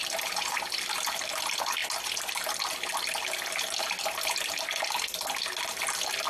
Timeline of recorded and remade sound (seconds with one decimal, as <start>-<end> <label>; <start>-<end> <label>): 0.0-6.3 recorded